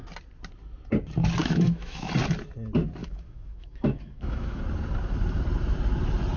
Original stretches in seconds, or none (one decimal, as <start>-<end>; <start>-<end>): 0.0-1.4; 2.1-3.0; 4.6-6.4